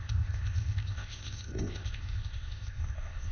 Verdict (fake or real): fake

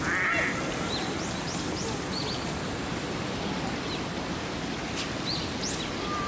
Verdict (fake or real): real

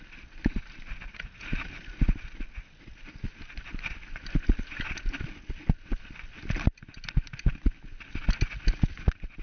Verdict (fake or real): real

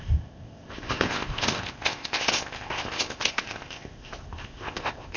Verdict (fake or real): fake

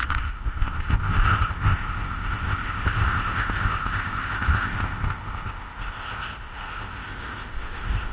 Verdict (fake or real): fake